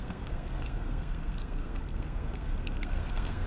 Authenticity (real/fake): fake